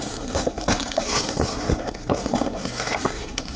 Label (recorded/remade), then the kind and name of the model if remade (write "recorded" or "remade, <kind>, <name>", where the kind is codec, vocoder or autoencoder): remade, codec, SNAC